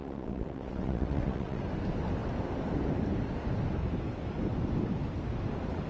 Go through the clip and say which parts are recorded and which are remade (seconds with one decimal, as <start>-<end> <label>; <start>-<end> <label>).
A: 0.0-1.6 remade; 1.6-5.9 recorded